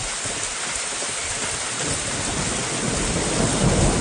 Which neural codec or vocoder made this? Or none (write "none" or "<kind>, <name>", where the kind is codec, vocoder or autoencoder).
none